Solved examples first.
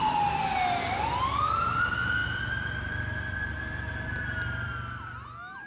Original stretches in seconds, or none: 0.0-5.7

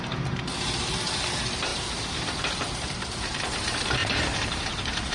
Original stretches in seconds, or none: none